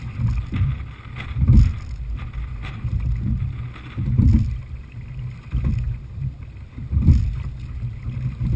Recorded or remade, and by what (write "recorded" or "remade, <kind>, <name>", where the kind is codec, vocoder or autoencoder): recorded